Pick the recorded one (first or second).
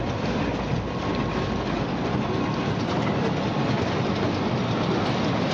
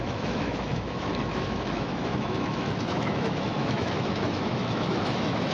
first